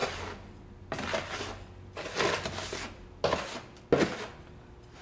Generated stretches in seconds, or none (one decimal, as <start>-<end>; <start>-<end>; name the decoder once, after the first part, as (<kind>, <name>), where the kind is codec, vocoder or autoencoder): none